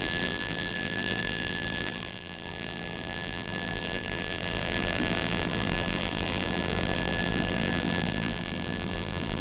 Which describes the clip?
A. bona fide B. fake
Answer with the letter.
B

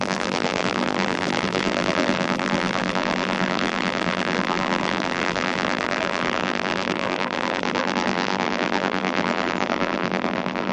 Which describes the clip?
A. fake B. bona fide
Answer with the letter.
A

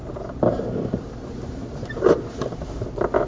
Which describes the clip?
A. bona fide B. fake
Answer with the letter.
B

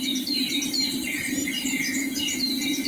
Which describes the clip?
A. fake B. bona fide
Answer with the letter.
A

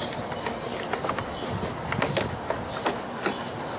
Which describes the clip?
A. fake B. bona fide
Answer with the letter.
B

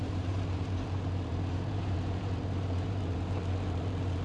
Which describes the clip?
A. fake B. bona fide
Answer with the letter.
A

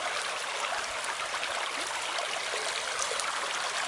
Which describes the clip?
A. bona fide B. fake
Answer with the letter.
A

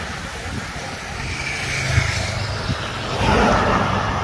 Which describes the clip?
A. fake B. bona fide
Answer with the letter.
B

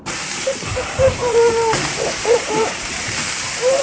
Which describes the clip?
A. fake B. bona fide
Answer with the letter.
A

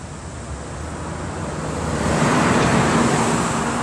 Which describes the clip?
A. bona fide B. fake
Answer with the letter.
A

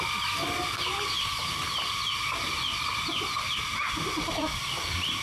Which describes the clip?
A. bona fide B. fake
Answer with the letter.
B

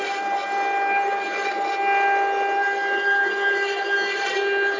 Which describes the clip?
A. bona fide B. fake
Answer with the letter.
A